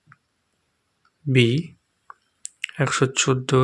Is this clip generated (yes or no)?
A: no